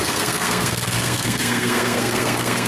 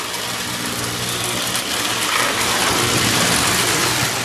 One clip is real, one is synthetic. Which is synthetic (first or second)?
first